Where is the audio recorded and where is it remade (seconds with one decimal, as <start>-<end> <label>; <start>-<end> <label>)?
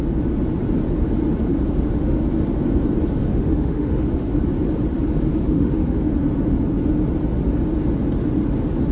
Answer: 0.0-1.5 recorded; 1.5-2.3 remade; 2.3-3.2 recorded; 3.2-4.3 remade; 4.3-5.3 recorded; 5.3-6.1 remade; 6.1-8.9 recorded